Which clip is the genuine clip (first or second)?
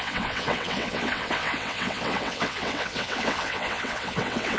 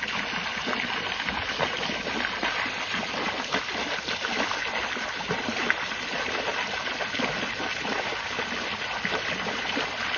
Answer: second